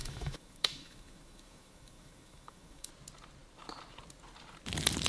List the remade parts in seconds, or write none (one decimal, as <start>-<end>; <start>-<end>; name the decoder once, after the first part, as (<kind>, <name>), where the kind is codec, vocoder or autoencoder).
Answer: 0.0-2.9 (autoencoder, DAC-VAE)